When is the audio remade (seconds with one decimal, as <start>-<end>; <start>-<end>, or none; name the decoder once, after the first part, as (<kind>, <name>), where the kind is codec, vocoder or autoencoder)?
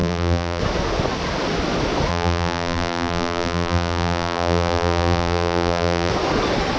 0.0-0.6 (vocoder, BigVGAN v2); 2.1-6.1